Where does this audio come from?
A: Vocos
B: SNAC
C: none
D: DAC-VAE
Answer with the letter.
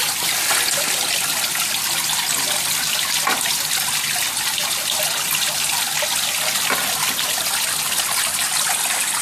C